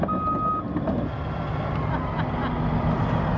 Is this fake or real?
real